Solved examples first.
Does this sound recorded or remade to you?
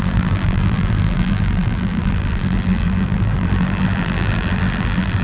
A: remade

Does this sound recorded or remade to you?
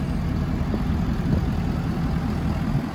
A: recorded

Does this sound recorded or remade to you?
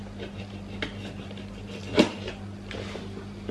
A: recorded